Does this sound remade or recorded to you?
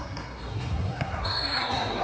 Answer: remade